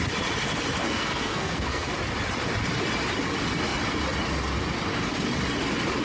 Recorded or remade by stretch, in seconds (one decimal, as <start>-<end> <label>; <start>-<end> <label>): 0.0-0.8 recorded; 0.8-1.9 remade; 1.9-6.0 recorded